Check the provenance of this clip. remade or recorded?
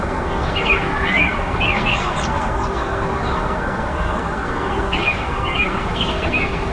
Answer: remade